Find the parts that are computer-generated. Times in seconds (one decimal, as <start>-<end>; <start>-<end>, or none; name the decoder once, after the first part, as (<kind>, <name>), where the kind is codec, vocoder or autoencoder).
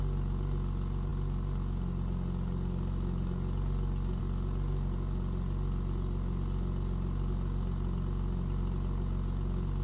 none